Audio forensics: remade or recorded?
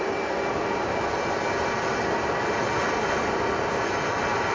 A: recorded